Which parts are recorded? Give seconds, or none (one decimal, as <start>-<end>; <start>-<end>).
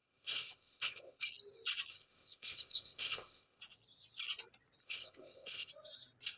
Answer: 1.2-1.9; 3.6-4.8; 5.7-6.4